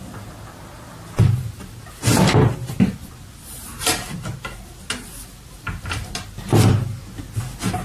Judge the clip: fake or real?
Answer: real